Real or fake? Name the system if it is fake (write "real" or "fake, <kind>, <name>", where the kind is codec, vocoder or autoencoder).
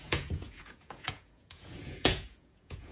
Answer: fake, vocoder, Vocos